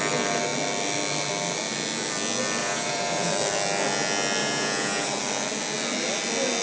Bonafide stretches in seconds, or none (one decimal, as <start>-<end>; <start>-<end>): 0.0-2.6; 3.3-4.4; 5.2-6.6